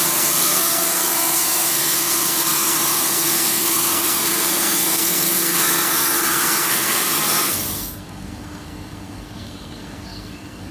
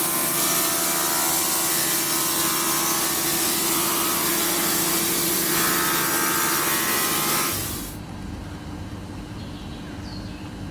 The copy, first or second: first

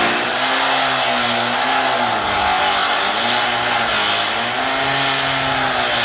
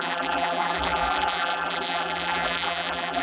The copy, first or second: second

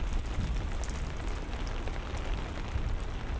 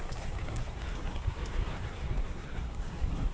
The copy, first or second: second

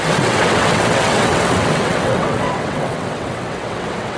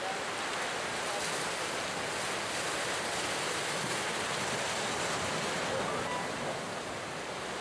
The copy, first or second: first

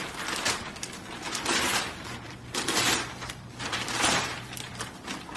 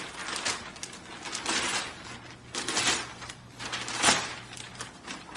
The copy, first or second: first